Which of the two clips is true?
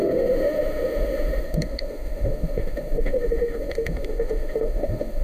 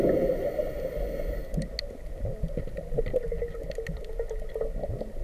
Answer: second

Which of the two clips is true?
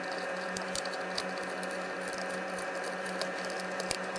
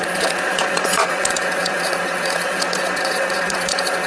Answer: first